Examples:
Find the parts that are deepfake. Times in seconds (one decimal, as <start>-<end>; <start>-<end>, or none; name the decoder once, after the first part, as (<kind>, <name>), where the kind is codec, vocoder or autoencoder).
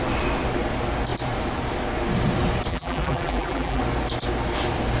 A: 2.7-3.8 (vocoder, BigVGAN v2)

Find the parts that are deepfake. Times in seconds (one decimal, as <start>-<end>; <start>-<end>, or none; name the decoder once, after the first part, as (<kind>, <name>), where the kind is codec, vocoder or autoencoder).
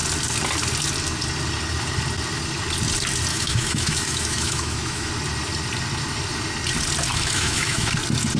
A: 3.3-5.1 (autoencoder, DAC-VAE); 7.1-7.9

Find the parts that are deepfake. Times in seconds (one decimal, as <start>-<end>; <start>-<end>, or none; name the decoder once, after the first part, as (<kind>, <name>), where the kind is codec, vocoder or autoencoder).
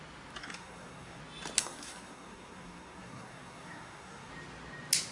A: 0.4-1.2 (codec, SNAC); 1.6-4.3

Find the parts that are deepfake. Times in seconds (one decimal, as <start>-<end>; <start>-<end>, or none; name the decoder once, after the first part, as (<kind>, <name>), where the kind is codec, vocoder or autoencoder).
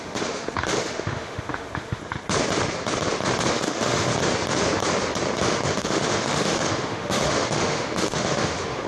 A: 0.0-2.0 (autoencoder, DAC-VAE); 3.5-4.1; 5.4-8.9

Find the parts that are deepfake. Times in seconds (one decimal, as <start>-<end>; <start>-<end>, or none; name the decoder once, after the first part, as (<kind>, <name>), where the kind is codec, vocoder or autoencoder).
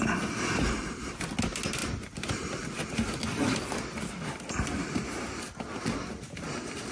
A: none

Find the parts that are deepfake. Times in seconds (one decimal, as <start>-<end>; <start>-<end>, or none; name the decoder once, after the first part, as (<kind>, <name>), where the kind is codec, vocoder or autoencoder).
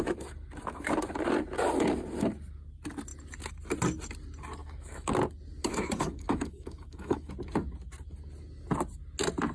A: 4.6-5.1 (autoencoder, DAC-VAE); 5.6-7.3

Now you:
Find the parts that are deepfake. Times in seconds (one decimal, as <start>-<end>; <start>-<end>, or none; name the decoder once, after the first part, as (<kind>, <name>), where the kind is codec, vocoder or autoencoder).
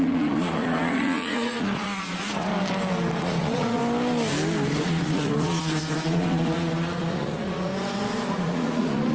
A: 0.0-2.5 (vocoder, Vocos); 3.2-3.8; 4.8-7.7; 8.3-9.1